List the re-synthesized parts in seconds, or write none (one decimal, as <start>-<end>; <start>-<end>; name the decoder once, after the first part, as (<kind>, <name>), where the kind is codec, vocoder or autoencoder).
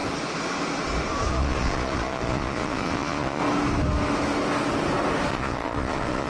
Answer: 1.3-3.4 (vocoder, Vocos); 5.3-6.3